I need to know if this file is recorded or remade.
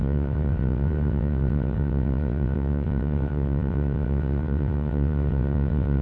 remade